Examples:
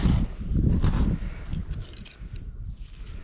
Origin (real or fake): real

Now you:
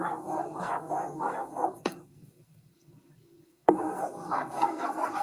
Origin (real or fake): fake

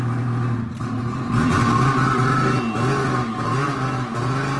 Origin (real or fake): real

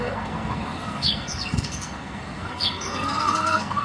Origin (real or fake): fake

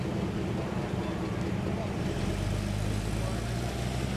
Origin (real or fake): real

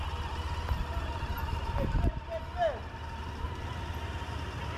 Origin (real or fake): real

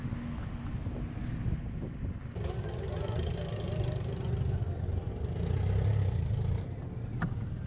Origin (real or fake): real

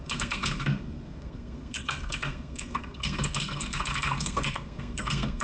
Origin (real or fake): fake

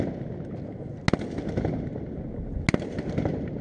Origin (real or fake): real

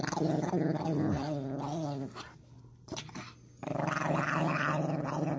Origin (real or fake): real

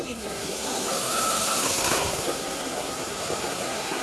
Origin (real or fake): fake